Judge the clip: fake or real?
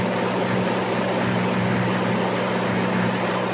real